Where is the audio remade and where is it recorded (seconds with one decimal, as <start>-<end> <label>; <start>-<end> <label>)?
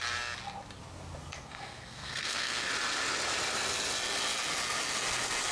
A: 0.0-1.2 recorded; 1.2-2.7 remade; 2.7-5.5 recorded